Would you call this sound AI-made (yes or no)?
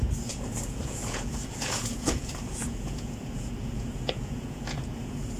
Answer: yes